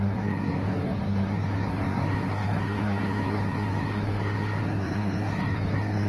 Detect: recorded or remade remade